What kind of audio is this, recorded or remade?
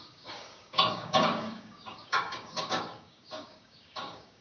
remade